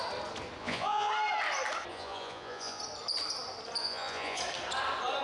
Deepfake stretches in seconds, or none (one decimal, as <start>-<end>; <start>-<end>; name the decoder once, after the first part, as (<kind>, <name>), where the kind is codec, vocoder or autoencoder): 0.6-1.1 (vocoder, Vocos); 1.9-2.8; 3.8-4.4